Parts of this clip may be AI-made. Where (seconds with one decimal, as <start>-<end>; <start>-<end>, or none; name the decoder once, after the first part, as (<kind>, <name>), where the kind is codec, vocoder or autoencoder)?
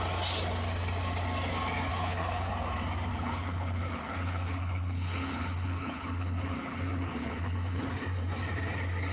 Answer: 1.9-2.5 (codec, HILCodec); 3.1-7.9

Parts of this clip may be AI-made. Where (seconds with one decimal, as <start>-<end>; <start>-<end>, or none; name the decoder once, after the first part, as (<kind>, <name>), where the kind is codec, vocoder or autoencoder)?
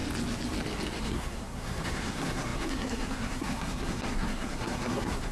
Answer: 1.0-5.3 (codec, SNAC)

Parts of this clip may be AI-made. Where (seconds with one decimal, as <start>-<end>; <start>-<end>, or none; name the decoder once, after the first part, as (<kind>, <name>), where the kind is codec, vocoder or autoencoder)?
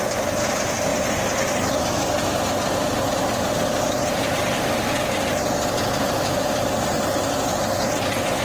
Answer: 3.2-4.4 (vocoder, BigVGAN v2)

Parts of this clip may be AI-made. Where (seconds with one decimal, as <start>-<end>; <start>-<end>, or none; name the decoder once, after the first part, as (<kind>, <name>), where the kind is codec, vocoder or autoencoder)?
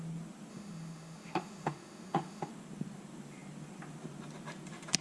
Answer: 0.5-2.5 (autoencoder, DAC-VAE)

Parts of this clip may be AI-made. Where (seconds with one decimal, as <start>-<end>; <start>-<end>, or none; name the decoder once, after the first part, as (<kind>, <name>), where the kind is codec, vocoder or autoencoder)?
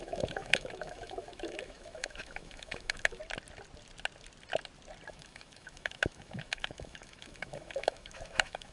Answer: 0.0-3.2 (autoencoder, DAC-VAE); 5.1-8.7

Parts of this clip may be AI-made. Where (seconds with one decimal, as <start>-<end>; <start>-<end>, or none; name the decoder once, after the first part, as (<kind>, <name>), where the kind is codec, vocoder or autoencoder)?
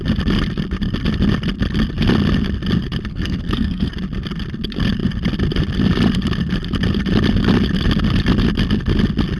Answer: 3.1-3.9 (codec, SNAC)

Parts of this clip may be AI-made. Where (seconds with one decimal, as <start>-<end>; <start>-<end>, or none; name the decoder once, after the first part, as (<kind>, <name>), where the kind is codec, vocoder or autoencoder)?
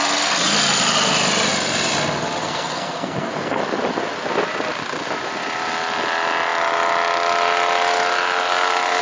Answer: 2.4-3.6 (codec, SNAC)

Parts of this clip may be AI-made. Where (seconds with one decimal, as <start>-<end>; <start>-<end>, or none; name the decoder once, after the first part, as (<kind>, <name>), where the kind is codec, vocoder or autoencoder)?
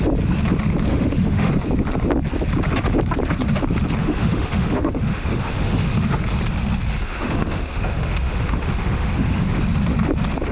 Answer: 0.9-1.5 (autoencoder, DAC-VAE); 4.0-6.2; 6.9-9.6